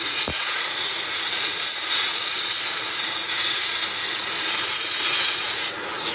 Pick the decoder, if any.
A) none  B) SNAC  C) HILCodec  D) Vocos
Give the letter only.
D